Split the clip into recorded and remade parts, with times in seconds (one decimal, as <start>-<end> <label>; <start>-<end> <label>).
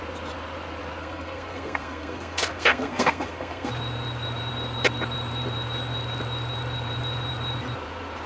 0.0-1.0 recorded; 1.0-3.7 remade; 3.7-8.3 recorded